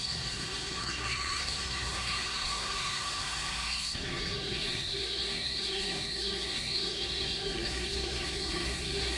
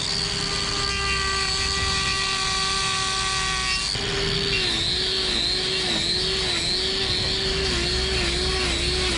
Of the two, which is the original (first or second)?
second